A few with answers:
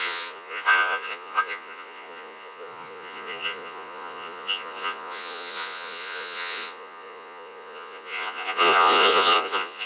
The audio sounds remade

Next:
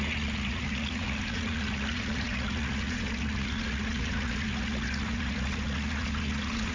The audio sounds remade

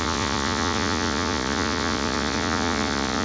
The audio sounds remade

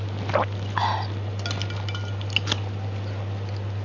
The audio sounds recorded